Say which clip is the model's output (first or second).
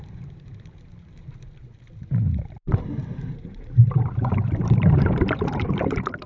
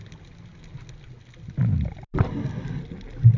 first